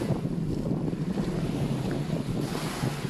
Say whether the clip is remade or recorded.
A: recorded